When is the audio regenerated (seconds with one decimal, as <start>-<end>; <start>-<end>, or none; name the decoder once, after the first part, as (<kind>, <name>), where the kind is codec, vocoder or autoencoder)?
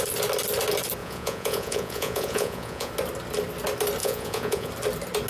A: 1.0-2.9 (vocoder, Vocos); 4.0-4.7